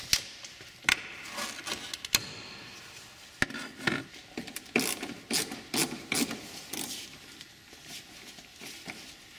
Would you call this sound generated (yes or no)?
no